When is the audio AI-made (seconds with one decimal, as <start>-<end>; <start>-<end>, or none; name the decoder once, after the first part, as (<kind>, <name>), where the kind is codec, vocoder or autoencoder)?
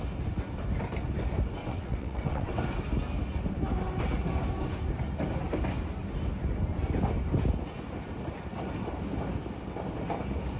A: 1.6-2.5 (vocoder, WaveNeXt)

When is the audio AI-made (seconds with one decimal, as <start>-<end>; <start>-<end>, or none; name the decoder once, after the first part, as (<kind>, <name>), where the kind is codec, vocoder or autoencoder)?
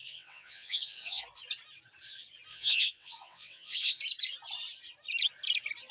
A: 0.0-1.2 (vocoder, WaveNeXt); 2.5-4.0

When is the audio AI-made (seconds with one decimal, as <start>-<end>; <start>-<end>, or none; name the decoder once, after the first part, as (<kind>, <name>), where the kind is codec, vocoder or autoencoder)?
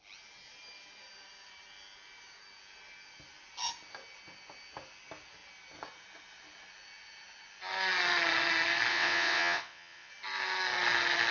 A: 8.9-10.1 (vocoder, WaveNeXt)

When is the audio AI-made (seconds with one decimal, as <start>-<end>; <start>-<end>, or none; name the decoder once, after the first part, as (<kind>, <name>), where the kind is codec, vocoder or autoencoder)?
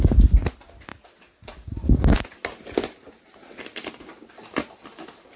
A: none